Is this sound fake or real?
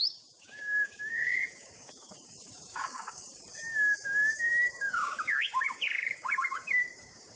fake